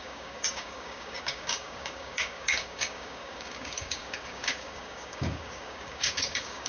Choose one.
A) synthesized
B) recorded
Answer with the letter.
A